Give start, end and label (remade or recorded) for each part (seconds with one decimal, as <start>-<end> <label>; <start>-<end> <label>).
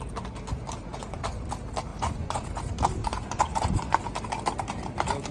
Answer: 0.0-0.8 recorded; 0.8-1.5 remade; 1.5-1.9 recorded; 1.9-2.6 remade; 2.6-3.0 recorded; 3.0-4.0 remade; 4.0-5.3 recorded